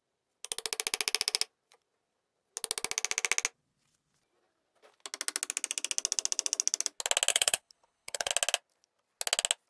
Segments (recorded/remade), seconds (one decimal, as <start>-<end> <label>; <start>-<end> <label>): 0.0-7.3 recorded; 7.3-8.3 remade; 8.3-9.7 recorded